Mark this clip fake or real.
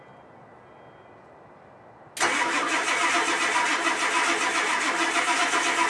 real